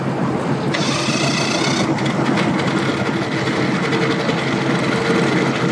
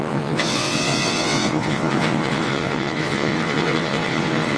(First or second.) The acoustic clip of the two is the first